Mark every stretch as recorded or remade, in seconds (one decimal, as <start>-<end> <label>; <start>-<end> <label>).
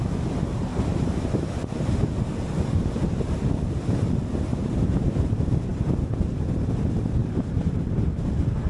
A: 0.0-0.7 recorded; 0.7-2.8 remade; 2.8-4.5 recorded; 4.5-5.2 remade; 5.2-5.7 recorded; 5.7-6.6 remade; 6.6-7.2 recorded; 7.2-7.9 remade; 7.9-8.7 recorded